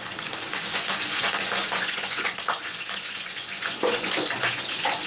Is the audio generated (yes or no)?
yes